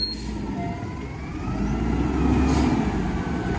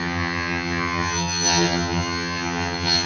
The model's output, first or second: second